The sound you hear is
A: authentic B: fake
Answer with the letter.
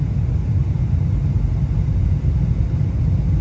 A